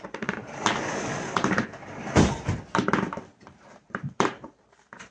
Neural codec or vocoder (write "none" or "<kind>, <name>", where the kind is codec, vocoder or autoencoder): vocoder, BigVGAN v2